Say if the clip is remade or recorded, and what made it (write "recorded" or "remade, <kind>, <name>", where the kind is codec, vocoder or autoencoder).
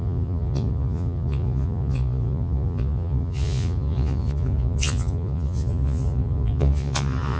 remade, vocoder, Vocos